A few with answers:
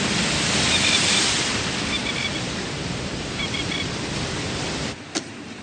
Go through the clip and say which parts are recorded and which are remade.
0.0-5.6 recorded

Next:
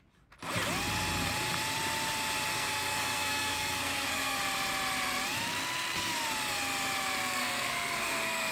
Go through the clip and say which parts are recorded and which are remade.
0.0-2.5 recorded; 2.5-4.4 remade; 4.4-7.2 recorded; 7.2-8.5 remade

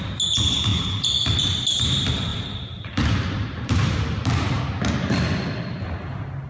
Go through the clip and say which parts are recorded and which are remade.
0.0-0.7 recorded; 0.7-1.8 remade; 1.8-2.3 recorded; 2.3-4.6 remade; 4.6-6.5 recorded